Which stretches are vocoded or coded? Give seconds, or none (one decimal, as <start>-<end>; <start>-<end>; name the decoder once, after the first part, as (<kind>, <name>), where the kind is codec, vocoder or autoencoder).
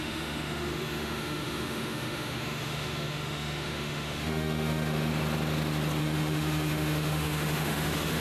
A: 0.0-5.1 (autoencoder, DAC-VAE); 6.0-8.2